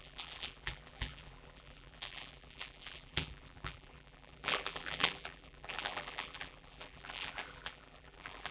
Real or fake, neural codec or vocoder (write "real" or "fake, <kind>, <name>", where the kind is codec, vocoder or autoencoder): fake, vocoder, BigVGAN v2